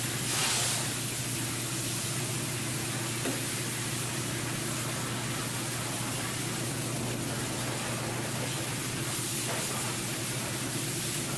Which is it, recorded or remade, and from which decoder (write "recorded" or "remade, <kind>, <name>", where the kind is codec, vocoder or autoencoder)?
recorded